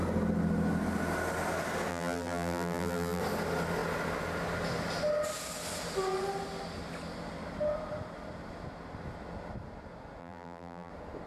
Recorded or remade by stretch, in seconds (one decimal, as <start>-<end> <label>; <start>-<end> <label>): 0.0-1.9 recorded; 1.9-3.2 remade; 3.2-10.2 recorded; 10.2-10.9 remade; 10.9-11.3 recorded